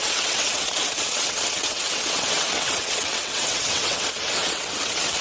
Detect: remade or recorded remade